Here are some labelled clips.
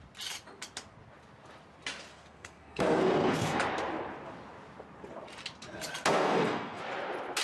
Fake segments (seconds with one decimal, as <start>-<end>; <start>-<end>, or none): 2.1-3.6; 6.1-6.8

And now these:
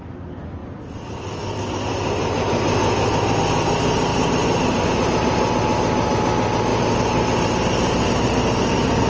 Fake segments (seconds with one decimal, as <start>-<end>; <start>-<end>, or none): 4.1-4.9

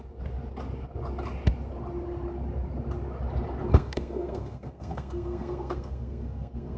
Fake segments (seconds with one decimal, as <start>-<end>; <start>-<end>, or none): 3.7-6.8

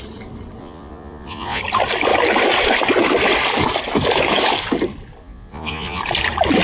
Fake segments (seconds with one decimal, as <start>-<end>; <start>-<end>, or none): 0.6-1.6; 5.2-6.0